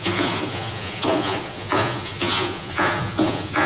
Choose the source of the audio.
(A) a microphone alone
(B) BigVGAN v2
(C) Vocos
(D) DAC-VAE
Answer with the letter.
C